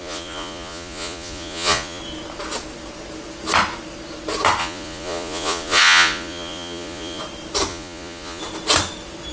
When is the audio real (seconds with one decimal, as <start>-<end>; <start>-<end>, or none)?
2.0-4.6; 7.2-7.7; 8.4-9.3